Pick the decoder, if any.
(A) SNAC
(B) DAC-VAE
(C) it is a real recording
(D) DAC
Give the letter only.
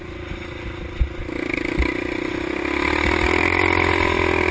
C